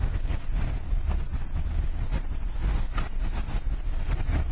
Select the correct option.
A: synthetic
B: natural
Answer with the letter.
B